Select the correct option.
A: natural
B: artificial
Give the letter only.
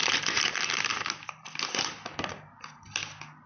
A